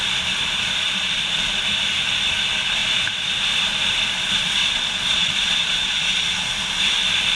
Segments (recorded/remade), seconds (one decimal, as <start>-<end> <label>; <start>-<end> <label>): 0.0-4.6 recorded; 4.6-6.5 remade; 6.5-7.4 recorded